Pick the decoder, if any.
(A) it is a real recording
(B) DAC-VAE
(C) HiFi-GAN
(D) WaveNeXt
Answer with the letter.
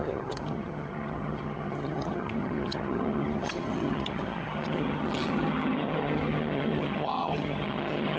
C